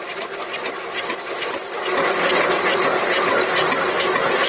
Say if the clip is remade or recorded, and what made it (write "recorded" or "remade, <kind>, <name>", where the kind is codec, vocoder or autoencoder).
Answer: recorded